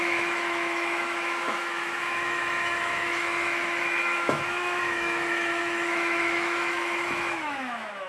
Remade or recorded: remade